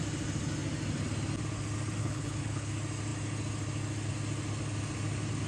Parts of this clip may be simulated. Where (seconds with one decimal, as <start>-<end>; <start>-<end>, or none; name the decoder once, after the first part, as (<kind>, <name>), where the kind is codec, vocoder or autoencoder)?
2.0-2.7 (codec, HILCodec)